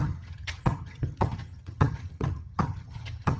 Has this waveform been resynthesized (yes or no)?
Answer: yes